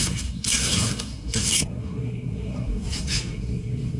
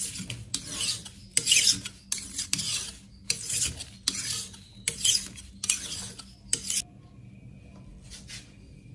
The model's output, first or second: first